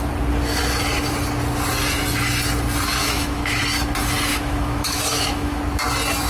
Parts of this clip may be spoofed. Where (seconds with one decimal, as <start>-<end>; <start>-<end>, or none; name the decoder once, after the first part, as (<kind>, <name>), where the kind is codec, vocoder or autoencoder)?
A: 3.0-3.6 (autoencoder, DAC-VAE); 4.3-5.6